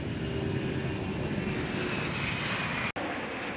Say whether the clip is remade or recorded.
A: recorded